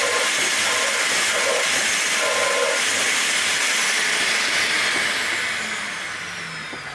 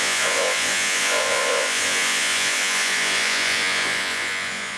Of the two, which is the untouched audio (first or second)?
first